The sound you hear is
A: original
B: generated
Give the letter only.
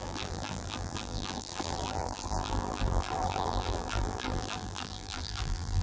B